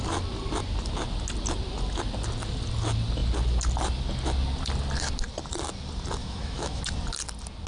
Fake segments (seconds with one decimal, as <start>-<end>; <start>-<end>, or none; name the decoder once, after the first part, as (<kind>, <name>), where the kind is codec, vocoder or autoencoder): 6.2-6.8 (autoencoder, DAC-VAE)